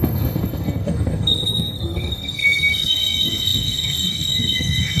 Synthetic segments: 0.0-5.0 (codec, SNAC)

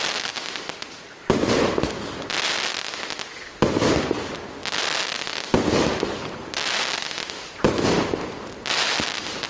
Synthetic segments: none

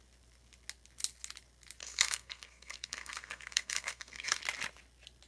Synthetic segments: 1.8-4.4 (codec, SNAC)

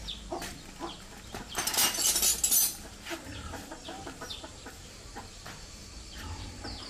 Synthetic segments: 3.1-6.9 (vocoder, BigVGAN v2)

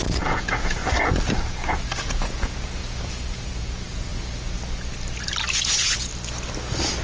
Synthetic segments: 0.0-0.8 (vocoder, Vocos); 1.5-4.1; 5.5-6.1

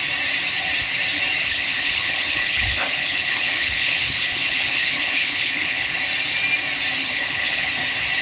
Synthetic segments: 1.4-6.0 (codec, HILCodec); 7.0-7.7

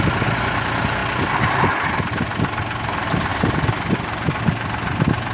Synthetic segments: none

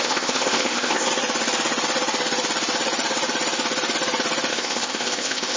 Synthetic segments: 0.0-1.1 (codec, ZipCodec); 4.5-5.6